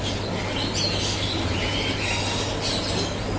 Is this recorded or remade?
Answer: recorded